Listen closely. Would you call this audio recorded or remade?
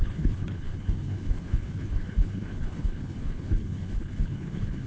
remade